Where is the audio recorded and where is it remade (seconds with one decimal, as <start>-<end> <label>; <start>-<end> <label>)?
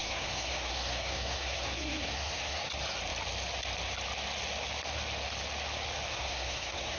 0.0-2.7 remade; 2.7-6.1 recorded; 6.1-7.0 remade